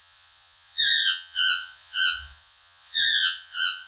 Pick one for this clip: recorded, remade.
remade